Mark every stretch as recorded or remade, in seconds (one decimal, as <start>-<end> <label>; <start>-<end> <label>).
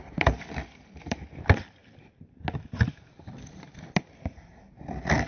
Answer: 0.0-1.8 remade; 1.8-5.3 recorded